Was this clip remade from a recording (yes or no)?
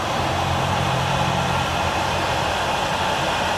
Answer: yes